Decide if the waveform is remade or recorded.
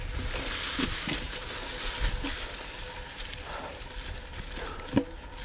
recorded